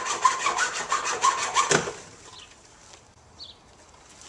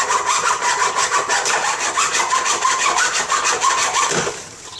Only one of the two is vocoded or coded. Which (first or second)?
second